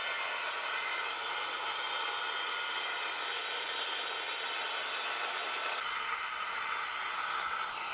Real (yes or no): yes